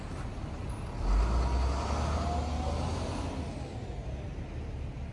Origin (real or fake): real